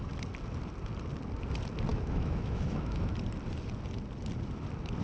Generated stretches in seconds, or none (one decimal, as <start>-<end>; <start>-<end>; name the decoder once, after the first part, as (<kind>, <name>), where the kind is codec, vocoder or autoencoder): 1.9-3.1 (autoencoder, DAC-VAE)